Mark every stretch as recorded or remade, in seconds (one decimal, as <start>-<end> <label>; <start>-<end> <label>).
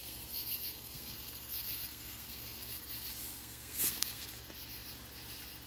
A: 0.0-2.8 remade; 2.8-3.2 recorded; 3.2-4.3 remade; 4.3-5.7 recorded